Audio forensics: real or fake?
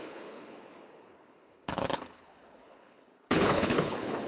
fake